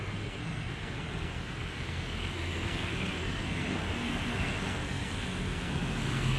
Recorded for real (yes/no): no